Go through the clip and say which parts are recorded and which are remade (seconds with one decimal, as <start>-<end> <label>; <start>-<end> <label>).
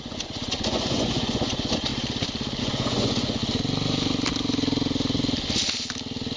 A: 0.0-1.9 remade; 1.9-2.6 recorded; 2.6-3.4 remade; 3.4-6.4 recorded